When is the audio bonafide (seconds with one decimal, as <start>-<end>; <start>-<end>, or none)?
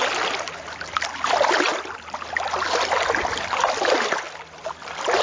0.0-5.2